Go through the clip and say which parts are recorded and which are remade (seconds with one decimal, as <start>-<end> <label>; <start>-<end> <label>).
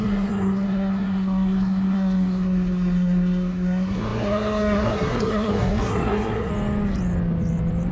0.0-6.5 remade; 6.5-7.9 recorded